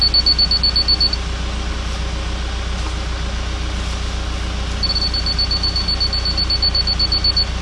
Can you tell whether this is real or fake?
real